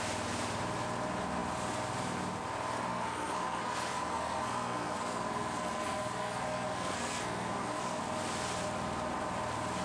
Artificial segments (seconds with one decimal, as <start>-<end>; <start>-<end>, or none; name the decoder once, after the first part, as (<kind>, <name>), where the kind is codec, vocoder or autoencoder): 2.9-8.0 (codec, SNAC)